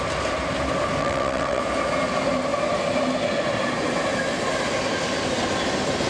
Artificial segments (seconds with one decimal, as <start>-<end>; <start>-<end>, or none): 1.0-1.6